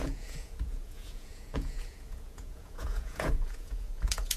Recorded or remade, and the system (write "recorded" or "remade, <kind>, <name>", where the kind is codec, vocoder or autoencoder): remade, vocoder, Vocos